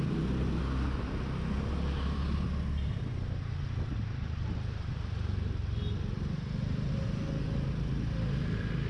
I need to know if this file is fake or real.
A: real